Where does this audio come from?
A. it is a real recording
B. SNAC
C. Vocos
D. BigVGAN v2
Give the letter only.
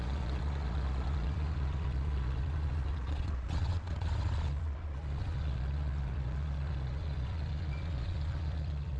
C